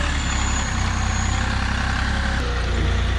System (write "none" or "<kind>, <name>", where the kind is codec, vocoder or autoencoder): none